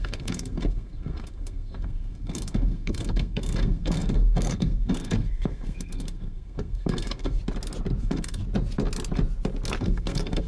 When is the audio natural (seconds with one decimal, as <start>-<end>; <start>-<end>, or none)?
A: 7.4-8.0; 8.4-9.8